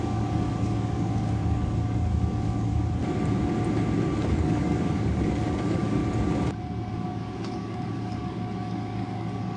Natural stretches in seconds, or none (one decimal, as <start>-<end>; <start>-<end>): 3.0-4.3; 6.0-6.9